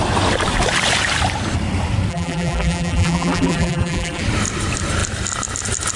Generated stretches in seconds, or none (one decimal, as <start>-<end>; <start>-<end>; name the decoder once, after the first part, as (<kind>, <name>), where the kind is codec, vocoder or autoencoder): 2.1-4.2 (vocoder, BigVGAN v2)

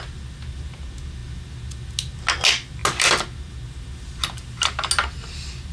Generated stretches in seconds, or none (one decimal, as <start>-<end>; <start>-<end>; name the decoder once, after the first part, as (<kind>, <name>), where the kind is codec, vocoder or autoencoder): none

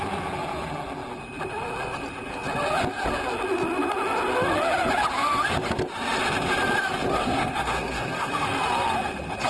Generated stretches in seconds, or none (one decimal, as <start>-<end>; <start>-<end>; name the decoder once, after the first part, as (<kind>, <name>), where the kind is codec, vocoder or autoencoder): 7.1-8.3 (codec, SNAC)

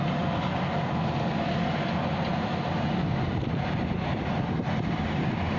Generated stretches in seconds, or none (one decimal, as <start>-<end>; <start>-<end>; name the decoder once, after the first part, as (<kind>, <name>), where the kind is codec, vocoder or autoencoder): none

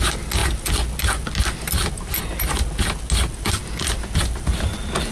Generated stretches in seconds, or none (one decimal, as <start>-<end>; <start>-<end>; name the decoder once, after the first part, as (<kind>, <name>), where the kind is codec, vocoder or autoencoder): none

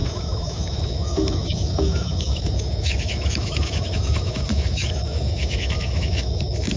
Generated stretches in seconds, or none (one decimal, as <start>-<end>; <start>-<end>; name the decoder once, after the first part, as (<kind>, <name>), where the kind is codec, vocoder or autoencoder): 0.0-6.8 (autoencoder, DAC-VAE)

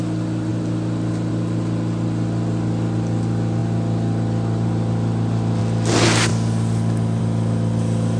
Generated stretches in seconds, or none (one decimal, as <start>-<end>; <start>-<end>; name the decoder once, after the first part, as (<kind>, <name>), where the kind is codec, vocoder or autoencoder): none